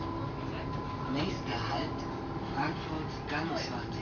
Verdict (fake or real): real